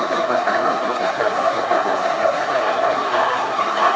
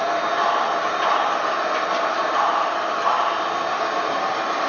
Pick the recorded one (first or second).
second